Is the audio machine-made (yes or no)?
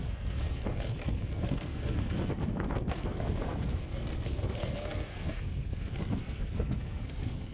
yes